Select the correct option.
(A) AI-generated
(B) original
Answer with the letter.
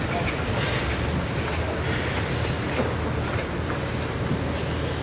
B